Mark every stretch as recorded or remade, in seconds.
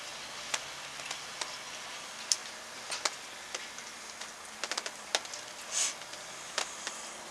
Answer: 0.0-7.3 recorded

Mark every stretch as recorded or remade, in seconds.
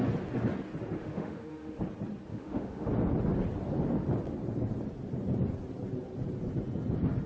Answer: 0.0-1.0 recorded; 1.0-1.8 remade; 1.8-2.3 recorded; 2.3-2.9 remade; 2.9-7.3 recorded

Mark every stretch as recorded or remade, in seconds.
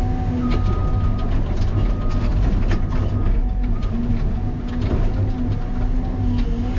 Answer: 0.0-6.8 recorded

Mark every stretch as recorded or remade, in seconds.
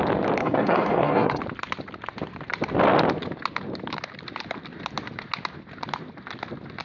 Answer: 0.0-0.4 recorded; 0.4-1.4 remade; 1.4-6.8 recorded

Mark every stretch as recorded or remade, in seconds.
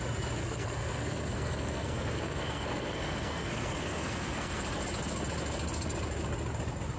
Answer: 0.0-0.4 recorded; 0.4-4.6 remade; 4.6-7.0 recorded